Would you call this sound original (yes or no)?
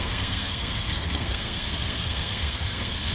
no